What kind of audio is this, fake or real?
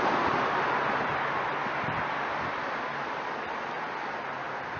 real